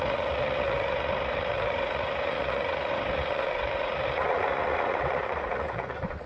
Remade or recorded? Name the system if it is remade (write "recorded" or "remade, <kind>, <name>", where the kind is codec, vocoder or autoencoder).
remade, vocoder, Vocos